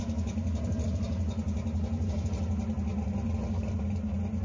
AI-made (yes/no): no